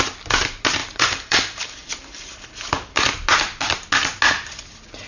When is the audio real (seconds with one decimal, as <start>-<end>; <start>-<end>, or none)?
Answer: 0.0-0.8; 2.5-5.1